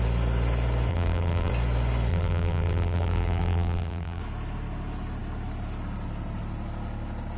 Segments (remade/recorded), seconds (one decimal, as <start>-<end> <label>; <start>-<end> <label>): 0.0-0.9 recorded; 0.9-1.5 remade; 1.5-2.1 recorded; 2.1-4.2 remade; 4.2-7.4 recorded